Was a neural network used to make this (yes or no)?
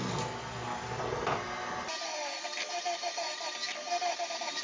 no